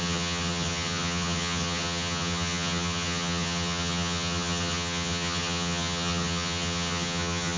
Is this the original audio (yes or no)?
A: no